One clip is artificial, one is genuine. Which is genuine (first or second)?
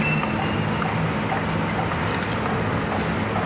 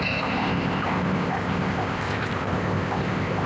first